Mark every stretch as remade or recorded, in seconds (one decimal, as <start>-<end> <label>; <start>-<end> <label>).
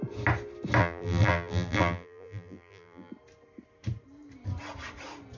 0.0-0.8 recorded; 0.8-3.1 remade; 3.1-5.4 recorded